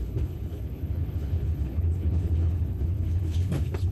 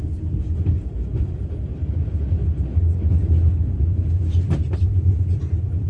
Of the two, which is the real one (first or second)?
second